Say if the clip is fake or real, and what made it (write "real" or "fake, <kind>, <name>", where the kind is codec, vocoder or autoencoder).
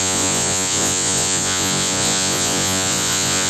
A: fake, vocoder, Vocos